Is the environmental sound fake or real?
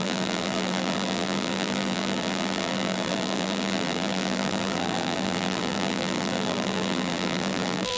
fake